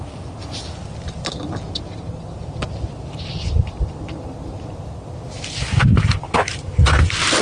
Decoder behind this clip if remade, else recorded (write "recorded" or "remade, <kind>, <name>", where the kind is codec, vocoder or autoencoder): recorded